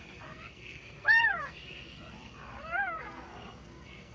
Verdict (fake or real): fake